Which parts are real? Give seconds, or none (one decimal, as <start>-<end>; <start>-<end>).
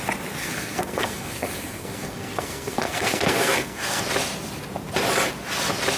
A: 0.0-0.4; 4.0-6.0